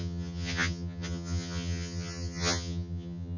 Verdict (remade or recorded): remade